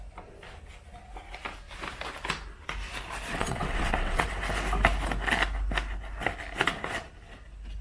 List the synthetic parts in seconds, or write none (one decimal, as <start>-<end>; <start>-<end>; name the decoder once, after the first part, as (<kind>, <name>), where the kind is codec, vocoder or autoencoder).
3.3-4.3 (vocoder, WaveNeXt)